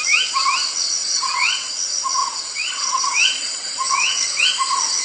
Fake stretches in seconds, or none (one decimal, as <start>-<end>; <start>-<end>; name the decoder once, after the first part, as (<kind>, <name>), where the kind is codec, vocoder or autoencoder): 1.0-1.7 (vocoder, WaveNeXt); 2.2-4.4